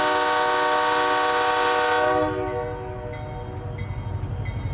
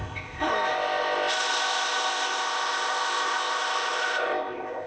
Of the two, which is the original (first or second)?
first